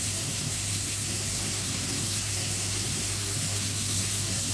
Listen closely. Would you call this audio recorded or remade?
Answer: remade